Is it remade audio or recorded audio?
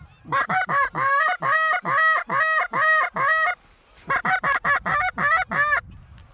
recorded